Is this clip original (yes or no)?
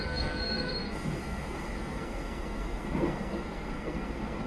no